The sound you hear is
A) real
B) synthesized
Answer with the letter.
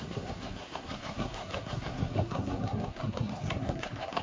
B